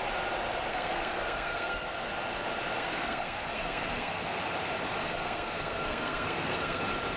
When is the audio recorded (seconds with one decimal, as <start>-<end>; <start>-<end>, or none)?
0.0-0.7; 2.1-2.8; 4.4-5.0; 6.8-7.2